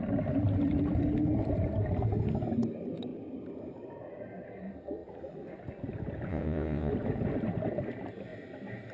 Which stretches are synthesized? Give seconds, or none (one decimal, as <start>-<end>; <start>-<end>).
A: 6.3-6.9